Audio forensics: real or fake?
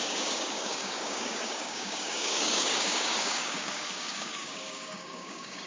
fake